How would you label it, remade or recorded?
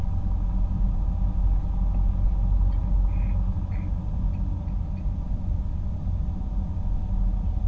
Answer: recorded